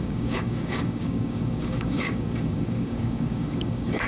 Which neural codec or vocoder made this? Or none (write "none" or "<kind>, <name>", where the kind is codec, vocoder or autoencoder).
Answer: codec, DAC